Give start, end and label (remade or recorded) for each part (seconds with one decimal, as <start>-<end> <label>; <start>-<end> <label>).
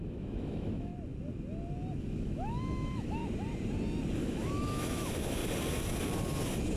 0.0-0.9 remade; 0.9-2.0 recorded; 2.0-3.2 remade; 3.2-4.2 recorded; 4.2-5.4 remade; 5.4-6.8 recorded